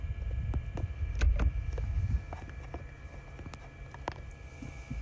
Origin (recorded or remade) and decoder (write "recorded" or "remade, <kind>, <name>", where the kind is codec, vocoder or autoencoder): recorded